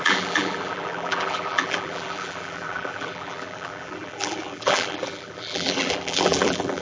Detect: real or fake fake